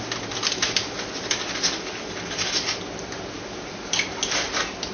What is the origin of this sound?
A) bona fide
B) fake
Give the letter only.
A